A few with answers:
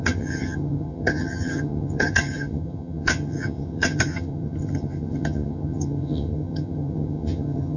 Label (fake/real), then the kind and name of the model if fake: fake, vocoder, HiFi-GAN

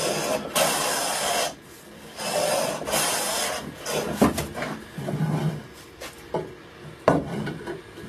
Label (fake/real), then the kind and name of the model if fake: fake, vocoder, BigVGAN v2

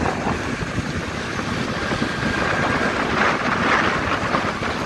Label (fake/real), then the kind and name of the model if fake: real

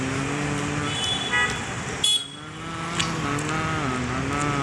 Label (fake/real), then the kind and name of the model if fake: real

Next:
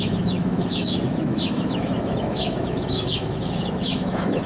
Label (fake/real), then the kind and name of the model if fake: fake, autoencoder, DAC-VAE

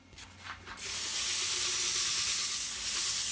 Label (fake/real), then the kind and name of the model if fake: real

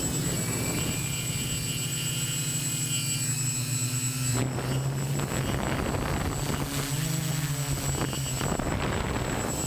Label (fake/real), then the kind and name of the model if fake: real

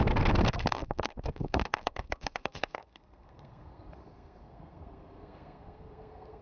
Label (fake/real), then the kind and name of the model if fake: fake, codec, SNAC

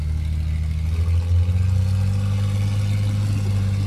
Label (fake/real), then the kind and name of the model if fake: real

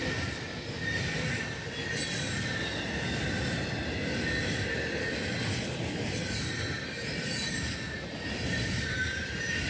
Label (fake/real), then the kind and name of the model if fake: real